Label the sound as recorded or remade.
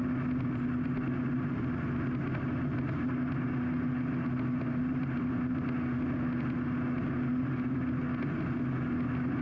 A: recorded